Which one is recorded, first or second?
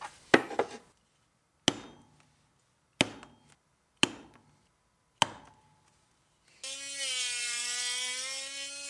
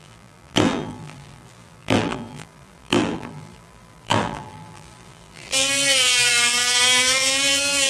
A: first